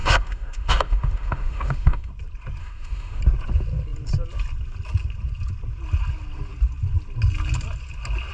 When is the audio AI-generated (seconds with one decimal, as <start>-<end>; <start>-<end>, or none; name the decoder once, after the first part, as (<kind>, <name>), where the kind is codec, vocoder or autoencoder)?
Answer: 0.0-2.1 (autoencoder, DAC-VAE); 2.6-3.2